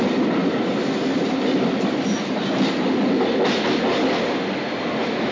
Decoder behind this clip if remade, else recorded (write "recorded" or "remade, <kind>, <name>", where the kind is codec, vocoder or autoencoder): recorded